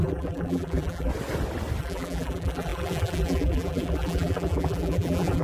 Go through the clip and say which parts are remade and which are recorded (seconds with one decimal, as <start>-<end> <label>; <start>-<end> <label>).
0.0-1.1 remade; 1.1-1.8 recorded; 1.8-5.4 remade